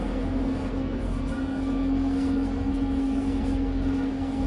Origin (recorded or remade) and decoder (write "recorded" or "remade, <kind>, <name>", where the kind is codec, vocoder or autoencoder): remade, codec, SNAC